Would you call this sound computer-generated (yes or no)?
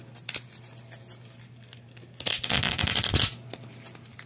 no